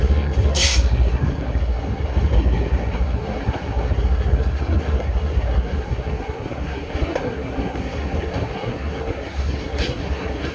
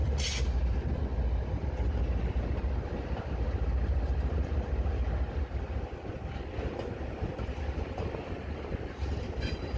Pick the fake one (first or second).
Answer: first